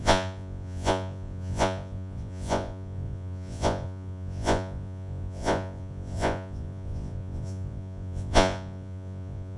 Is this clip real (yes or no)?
no